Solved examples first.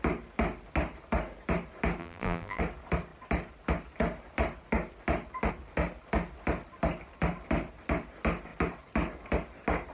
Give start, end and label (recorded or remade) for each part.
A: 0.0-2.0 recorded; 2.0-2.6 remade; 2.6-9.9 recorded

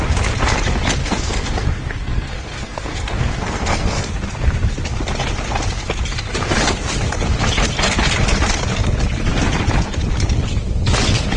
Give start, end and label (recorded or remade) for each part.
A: 0.0-1.0 recorded; 1.0-4.1 remade; 4.1-11.4 recorded

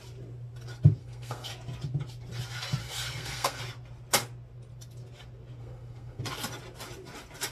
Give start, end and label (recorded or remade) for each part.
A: 0.0-1.0 recorded; 1.0-1.5 remade; 1.5-2.8 recorded; 2.8-3.6 remade; 3.6-5.6 recorded; 5.6-6.2 remade; 6.2-7.5 recorded

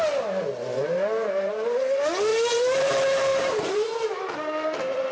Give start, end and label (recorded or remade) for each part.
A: 0.0-0.7 recorded; 0.7-1.9 remade; 1.9-2.3 recorded; 2.3-2.9 remade; 2.9-3.3 recorded; 3.3-5.1 remade